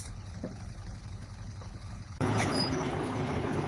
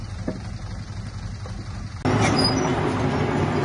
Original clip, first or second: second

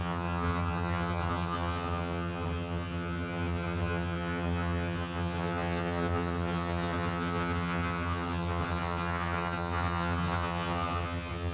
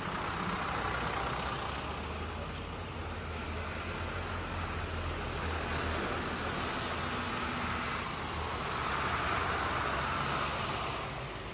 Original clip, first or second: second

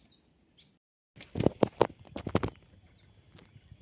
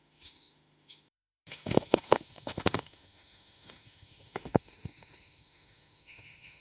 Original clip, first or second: first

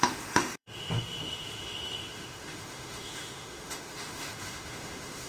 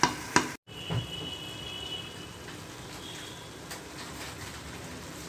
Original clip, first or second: second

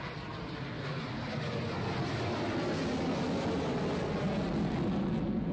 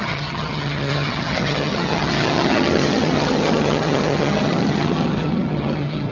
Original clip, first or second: first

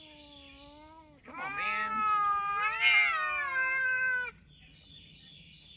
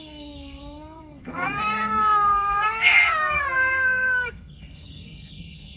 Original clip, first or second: first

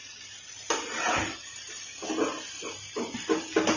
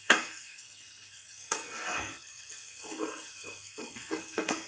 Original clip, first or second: first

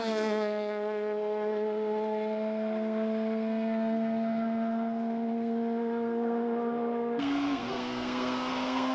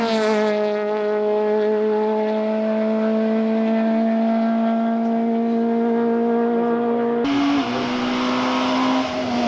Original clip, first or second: second